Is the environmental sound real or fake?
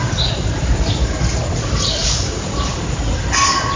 real